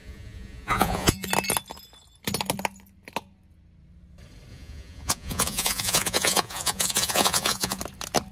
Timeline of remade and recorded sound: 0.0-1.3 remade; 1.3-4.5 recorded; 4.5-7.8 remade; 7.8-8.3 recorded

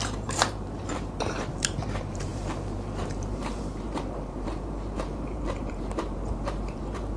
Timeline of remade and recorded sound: 0.0-7.2 remade

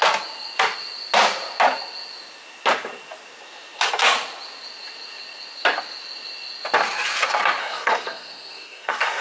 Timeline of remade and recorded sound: 0.0-7.6 recorded; 7.6-9.2 remade

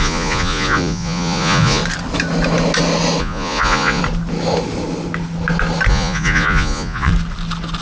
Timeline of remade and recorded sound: 0.0-1.8 remade; 1.8-3.2 recorded; 3.2-4.0 remade; 4.0-5.9 recorded; 5.9-7.1 remade; 7.1-7.8 recorded